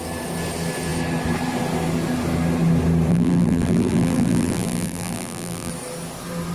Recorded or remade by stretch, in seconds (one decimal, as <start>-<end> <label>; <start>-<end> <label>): 0.0-3.1 recorded; 3.1-5.7 remade; 5.7-6.5 recorded